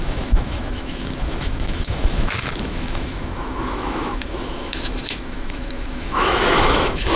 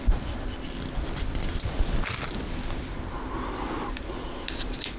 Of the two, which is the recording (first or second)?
second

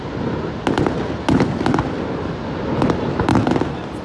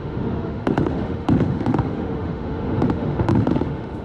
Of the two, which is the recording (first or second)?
first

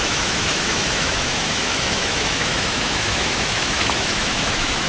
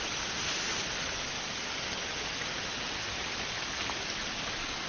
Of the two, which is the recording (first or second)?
second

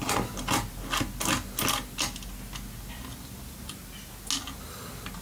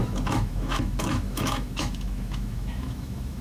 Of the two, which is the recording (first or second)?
first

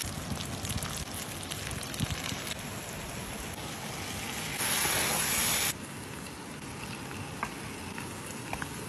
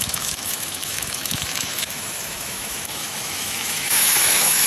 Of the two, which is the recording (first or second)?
first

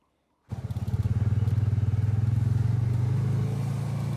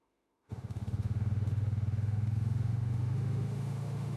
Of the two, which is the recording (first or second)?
first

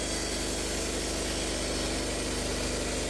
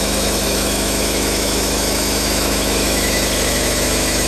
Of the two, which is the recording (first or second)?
first